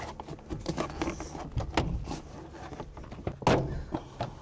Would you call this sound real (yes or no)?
yes